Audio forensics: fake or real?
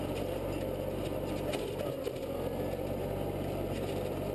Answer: real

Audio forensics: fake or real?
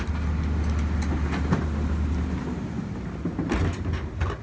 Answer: real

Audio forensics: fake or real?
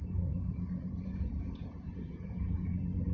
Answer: fake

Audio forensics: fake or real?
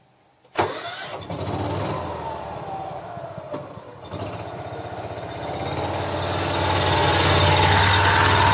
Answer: real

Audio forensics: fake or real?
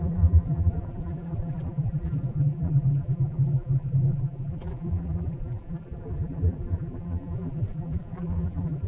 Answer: fake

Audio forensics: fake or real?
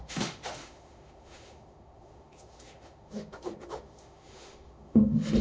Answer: fake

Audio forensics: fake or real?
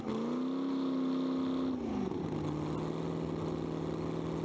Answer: real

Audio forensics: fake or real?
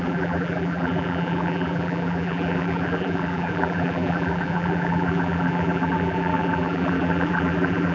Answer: fake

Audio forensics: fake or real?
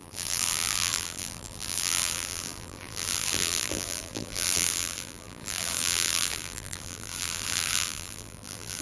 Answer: fake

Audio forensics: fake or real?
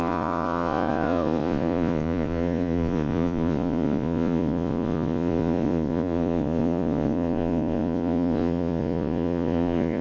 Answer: fake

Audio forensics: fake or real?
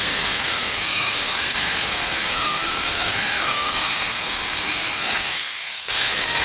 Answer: fake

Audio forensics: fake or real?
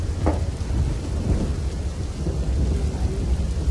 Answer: real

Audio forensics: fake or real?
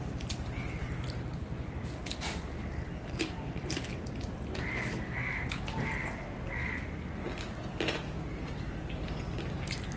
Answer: real